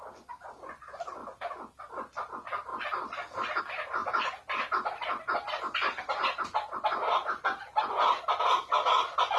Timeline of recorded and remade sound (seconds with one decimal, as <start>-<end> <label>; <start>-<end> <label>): 0.0-2.7 recorded; 2.7-3.6 remade; 3.6-9.4 recorded